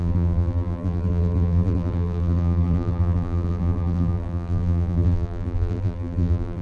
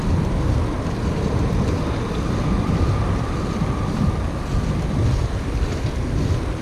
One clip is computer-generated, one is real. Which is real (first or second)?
second